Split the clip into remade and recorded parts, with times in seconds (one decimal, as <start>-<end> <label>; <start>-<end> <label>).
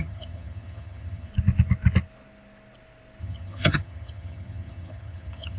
0.0-1.3 remade; 1.3-3.2 recorded; 3.2-5.6 remade